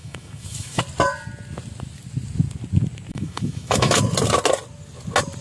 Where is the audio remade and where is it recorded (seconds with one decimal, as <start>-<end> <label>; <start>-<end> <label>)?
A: 0.0-0.8 remade; 0.8-3.1 recorded; 3.1-4.0 remade; 4.0-5.4 recorded